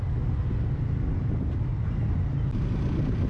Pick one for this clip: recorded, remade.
recorded